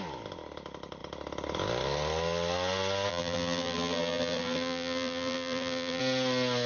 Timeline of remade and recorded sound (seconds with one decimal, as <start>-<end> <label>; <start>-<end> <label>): 0.0-3.1 recorded; 3.1-6.0 remade; 6.0-6.7 recorded